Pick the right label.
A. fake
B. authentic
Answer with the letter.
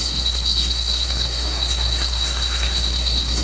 A